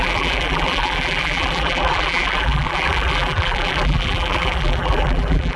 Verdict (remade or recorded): remade